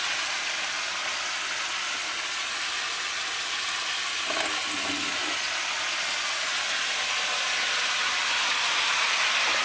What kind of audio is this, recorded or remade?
recorded